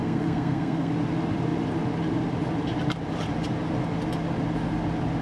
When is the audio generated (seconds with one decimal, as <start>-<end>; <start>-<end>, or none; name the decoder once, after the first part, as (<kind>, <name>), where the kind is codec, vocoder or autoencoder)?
0.0-0.9 (codec, SNAC)